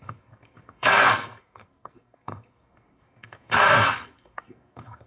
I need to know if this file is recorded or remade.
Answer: remade